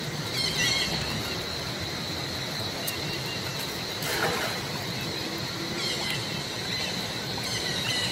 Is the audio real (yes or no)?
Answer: yes